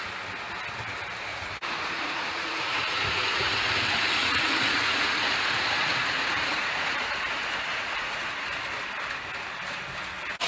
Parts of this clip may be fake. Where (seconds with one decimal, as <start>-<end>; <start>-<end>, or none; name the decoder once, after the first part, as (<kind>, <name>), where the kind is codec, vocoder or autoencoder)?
1.3-3.7 (vocoder, Vocos); 4.2-7.3; 7.7-8.6

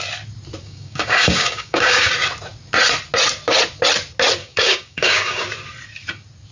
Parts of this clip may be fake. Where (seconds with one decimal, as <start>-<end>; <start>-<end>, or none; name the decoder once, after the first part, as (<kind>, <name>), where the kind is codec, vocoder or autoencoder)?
0.6-2.1 (codec, DAC); 4.4-5.4

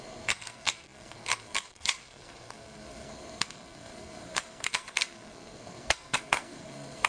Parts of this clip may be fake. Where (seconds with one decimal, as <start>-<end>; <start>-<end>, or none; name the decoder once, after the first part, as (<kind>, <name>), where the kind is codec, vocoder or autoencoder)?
0.0-7.1 (codec, SNAC)

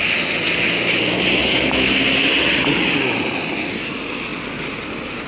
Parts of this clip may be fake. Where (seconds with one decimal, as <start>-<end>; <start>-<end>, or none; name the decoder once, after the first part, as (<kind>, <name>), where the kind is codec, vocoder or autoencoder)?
1.4-1.9 (autoencoder, DAC-VAE)

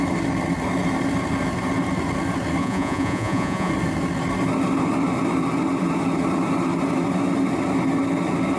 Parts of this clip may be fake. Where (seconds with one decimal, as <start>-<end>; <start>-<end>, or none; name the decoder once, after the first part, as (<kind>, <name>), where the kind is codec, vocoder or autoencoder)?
2.6-3.7 (vocoder, Vocos)

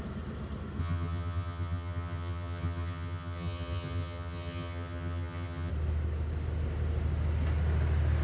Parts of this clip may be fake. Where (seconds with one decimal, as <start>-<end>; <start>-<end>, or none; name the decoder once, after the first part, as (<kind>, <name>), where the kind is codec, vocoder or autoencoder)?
0.8-5.7 (vocoder, HiFi-GAN)